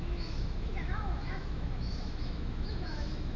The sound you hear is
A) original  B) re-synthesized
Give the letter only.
B